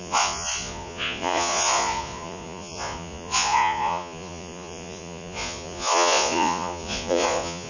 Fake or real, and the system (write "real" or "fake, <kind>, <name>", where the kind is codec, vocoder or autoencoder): fake, vocoder, Vocos